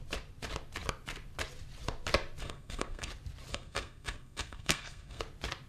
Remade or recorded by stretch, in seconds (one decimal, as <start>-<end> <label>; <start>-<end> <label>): 0.0-2.4 recorded; 2.4-3.1 remade; 3.1-3.5 recorded; 3.5-5.2 remade; 5.2-5.7 recorded